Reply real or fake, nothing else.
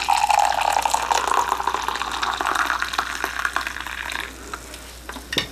real